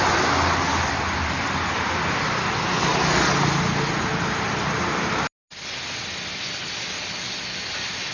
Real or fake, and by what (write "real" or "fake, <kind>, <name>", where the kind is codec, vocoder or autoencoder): real